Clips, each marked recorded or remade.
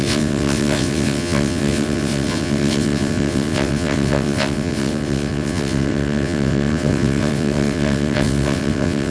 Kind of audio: remade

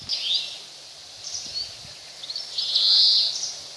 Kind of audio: recorded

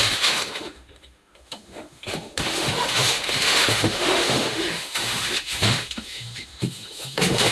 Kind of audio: remade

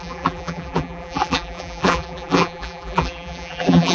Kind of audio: remade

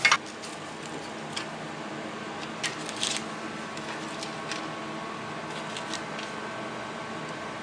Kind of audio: recorded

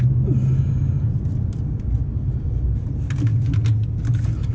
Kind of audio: recorded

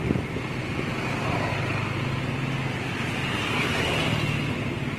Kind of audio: recorded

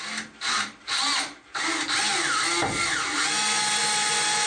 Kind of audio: recorded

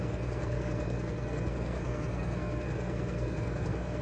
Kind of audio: remade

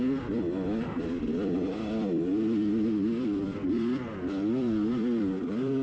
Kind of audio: remade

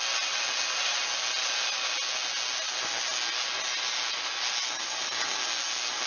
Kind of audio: recorded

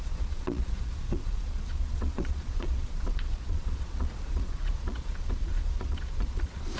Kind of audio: remade